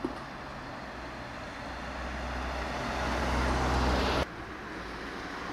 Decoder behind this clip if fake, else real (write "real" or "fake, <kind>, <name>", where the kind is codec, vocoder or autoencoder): real